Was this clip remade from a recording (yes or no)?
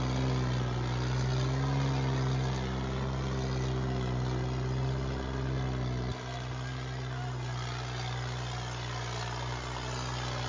no